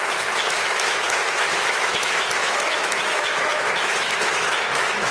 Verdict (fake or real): fake